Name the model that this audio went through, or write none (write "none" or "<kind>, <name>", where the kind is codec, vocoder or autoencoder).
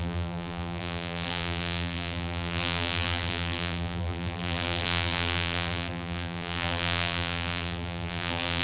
vocoder, BigVGAN v2